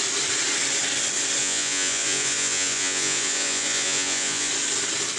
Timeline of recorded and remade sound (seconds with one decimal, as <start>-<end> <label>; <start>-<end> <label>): 0.0-1.4 recorded; 1.4-4.5 remade; 4.5-5.2 recorded